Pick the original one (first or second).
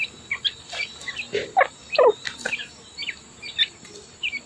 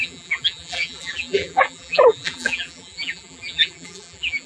first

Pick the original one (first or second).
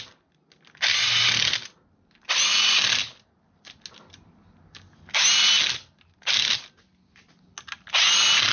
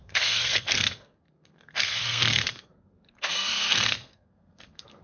first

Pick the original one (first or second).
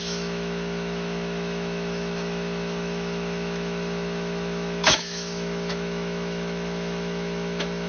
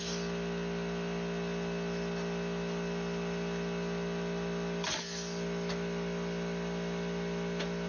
second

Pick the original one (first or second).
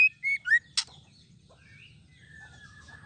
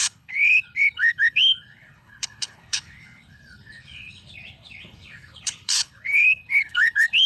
first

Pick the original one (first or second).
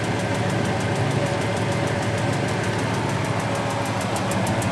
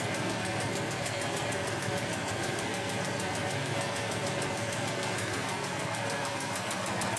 first